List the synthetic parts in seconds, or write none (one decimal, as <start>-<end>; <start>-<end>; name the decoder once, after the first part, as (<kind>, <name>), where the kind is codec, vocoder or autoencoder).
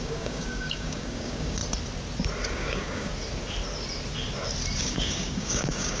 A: 0.0-1.6 (codec, DAC); 2.5-3.1; 4.8-6.0